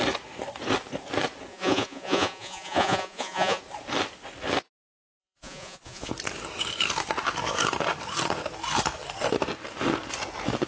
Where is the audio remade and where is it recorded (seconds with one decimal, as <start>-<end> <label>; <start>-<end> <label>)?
0.0-1.5 recorded; 1.5-3.6 remade; 3.6-5.2 recorded; 5.2-6.1 remade; 6.1-10.7 recorded